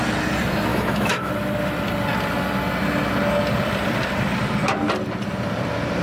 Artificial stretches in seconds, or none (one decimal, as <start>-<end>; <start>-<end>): 0.7-1.3